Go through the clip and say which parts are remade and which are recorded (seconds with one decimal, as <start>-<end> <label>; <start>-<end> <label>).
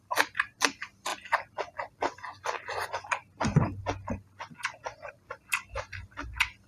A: 0.0-6.7 recorded